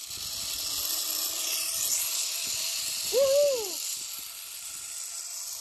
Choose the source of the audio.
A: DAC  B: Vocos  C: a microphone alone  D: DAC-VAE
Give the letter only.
C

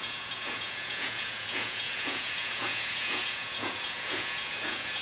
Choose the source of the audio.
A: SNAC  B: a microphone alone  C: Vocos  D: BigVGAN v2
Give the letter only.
C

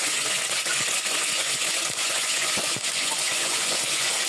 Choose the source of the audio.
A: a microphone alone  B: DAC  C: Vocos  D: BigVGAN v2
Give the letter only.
C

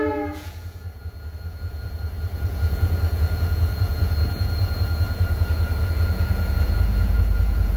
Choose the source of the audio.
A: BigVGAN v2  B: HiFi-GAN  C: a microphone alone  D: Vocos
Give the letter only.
D